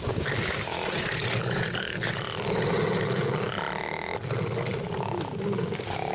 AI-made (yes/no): no